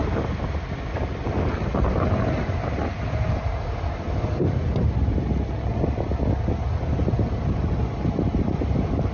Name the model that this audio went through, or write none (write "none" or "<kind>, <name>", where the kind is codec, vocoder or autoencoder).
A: none